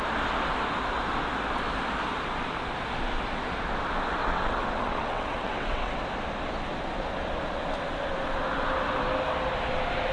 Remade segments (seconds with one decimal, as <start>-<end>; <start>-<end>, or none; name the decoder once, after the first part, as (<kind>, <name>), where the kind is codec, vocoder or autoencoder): 4.2-6.0 (vocoder, WaveNeXt)